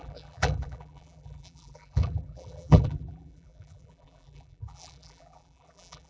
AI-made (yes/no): yes